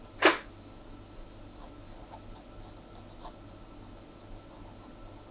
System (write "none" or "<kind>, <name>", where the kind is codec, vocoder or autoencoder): none